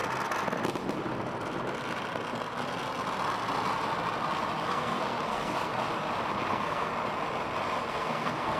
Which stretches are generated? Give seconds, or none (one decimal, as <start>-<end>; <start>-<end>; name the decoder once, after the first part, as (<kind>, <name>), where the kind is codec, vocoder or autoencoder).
4.7-5.7 (codec, SNAC); 6.5-6.9; 7.9-8.6